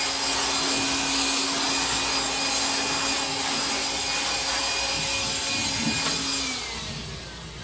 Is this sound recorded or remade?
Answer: recorded